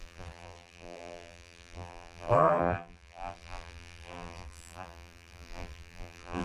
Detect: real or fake fake